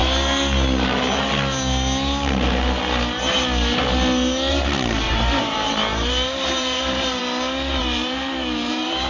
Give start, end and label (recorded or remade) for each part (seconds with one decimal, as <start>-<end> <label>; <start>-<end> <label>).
0.0-4.5 recorded; 4.5-7.2 remade; 7.2-7.8 recorded; 7.8-9.1 remade